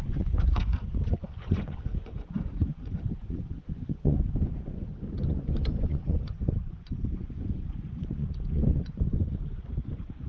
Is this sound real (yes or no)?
no